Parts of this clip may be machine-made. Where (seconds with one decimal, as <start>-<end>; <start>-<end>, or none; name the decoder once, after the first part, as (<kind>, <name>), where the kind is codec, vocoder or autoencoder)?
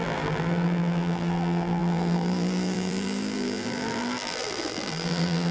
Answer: 0.0-5.5 (vocoder, BigVGAN v2)